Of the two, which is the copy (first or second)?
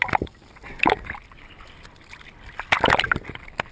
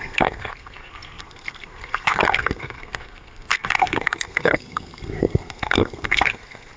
second